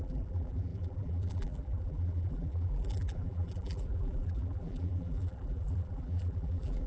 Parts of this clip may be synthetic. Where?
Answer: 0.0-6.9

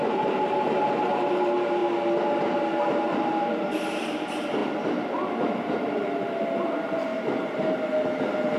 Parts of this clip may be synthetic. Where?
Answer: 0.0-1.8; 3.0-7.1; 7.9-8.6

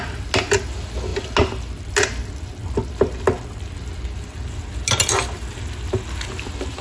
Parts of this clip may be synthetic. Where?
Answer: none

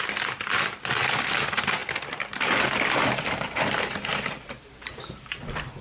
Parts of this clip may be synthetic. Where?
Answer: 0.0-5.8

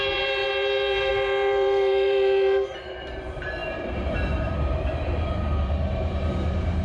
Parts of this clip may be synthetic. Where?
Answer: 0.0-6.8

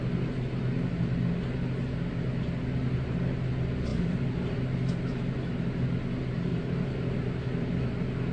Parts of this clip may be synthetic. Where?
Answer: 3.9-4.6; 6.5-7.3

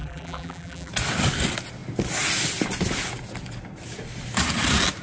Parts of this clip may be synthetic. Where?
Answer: 0.0-0.9